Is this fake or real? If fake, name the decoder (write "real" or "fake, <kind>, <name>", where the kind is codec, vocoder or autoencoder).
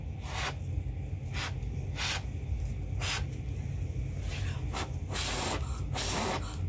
real